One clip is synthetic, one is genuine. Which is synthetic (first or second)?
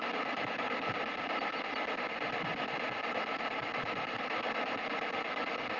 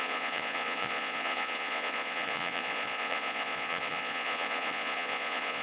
second